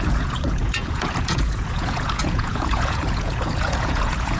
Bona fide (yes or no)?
no